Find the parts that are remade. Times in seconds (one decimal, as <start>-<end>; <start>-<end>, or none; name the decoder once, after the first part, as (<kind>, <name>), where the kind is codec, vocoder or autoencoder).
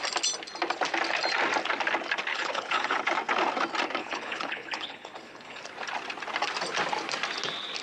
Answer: 2.3-3.0 (codec, HILCodec); 4.0-5.6